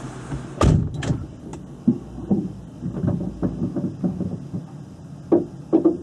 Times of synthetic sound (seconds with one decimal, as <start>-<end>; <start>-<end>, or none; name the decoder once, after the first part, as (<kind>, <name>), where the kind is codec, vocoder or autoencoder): none